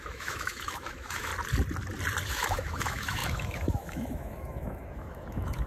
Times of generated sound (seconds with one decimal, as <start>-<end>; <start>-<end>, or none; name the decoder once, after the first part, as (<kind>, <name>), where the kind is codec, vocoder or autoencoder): 0.0-1.3 (autoencoder, DAC-VAE); 2.3-5.7